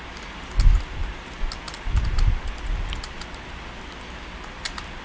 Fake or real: real